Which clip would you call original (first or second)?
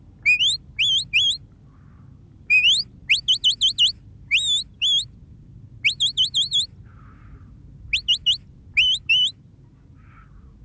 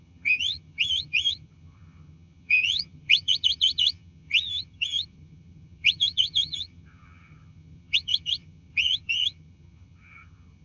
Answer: first